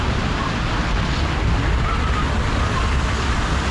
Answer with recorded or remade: recorded